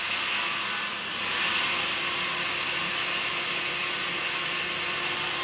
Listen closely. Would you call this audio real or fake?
real